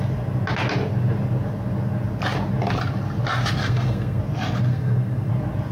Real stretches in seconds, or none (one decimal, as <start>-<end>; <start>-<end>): 0.0-3.6; 4.2-4.7; 5.3-5.7